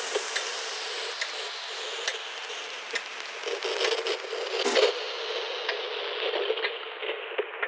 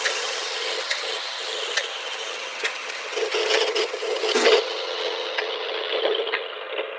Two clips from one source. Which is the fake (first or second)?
second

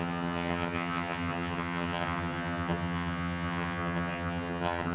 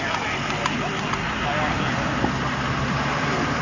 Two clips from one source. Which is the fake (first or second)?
first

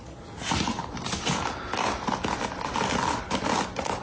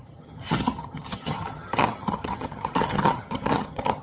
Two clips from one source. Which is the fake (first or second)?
second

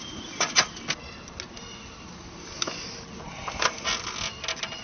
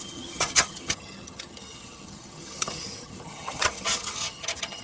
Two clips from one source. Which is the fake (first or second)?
second